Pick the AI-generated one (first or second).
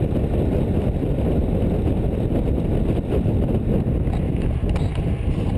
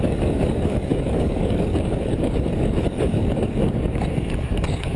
second